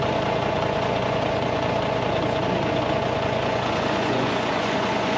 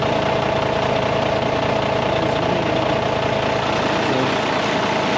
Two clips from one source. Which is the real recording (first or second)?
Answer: second